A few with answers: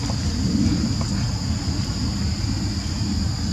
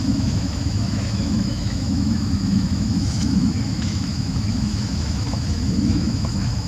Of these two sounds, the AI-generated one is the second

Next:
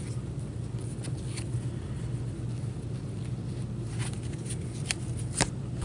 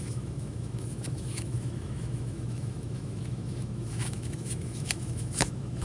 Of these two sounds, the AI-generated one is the second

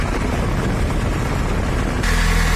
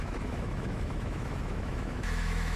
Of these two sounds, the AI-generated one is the second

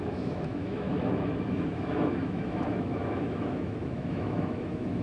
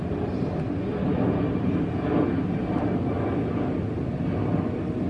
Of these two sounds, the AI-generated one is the first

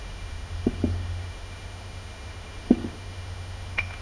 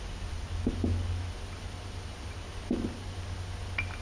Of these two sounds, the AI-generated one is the first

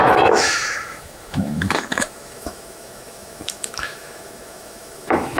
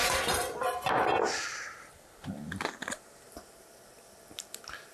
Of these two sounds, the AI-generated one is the first